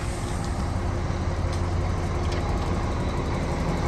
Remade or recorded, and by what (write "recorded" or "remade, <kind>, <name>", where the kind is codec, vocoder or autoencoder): recorded